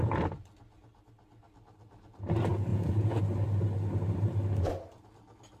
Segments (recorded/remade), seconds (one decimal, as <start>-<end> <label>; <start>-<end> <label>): 0.0-2.7 recorded; 2.7-3.2 remade; 3.2-5.6 recorded